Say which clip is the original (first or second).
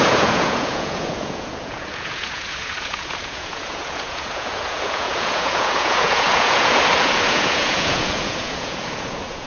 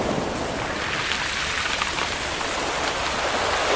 second